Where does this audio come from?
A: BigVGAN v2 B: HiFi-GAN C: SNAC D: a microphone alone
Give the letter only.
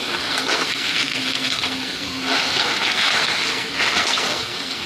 C